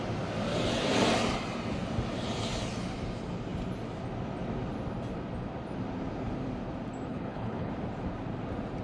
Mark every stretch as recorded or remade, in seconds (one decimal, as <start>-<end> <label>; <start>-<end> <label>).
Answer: 0.0-7.1 recorded; 7.1-7.7 remade; 7.7-8.8 recorded